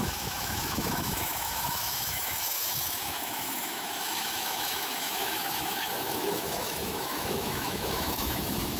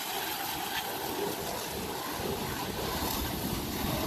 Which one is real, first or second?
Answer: second